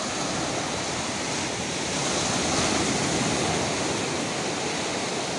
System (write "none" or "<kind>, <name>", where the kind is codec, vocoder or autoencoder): none